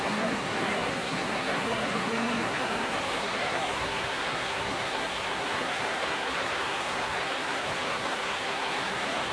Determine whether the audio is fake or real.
fake